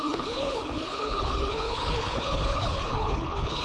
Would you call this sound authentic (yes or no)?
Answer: no